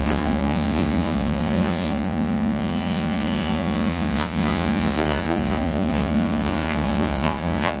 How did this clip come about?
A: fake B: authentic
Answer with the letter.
A